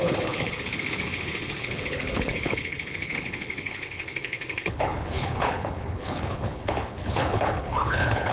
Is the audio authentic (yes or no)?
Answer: no